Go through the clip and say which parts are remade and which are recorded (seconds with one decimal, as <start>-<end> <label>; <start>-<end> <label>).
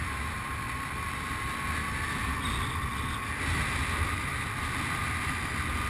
0.0-5.9 recorded